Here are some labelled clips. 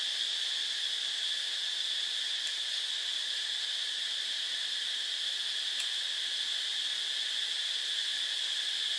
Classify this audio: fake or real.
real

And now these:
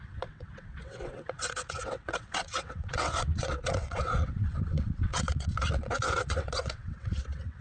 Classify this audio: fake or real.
fake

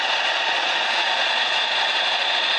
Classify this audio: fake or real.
fake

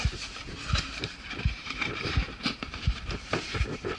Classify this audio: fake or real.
fake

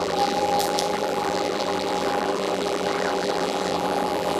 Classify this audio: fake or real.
fake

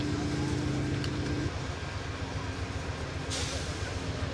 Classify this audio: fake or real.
real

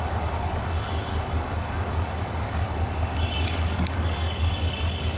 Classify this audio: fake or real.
fake